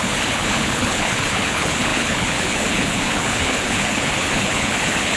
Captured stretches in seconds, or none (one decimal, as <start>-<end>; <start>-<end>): none